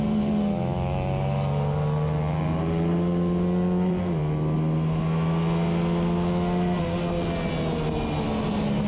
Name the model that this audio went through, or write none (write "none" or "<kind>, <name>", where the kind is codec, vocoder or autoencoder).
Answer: none